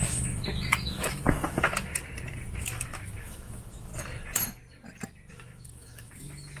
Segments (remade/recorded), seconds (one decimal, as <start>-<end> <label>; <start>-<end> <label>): 0.0-1.9 remade; 1.9-2.6 recorded; 2.6-3.9 remade; 3.9-5.3 recorded; 5.3-6.6 remade